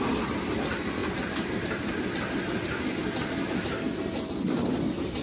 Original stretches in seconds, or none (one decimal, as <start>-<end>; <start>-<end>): 0.0-5.2